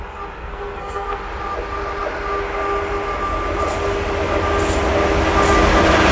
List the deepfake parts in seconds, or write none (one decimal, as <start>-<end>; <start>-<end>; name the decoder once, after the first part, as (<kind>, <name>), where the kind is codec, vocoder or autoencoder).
0.4-1.2 (codec, SNAC)